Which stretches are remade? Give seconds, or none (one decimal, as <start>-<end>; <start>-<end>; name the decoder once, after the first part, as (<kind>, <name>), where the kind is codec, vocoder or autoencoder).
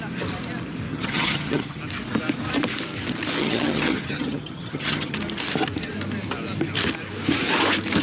0.9-1.8 (vocoder, HiFi-GAN); 3.4-5.2